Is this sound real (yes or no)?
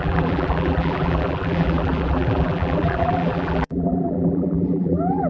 no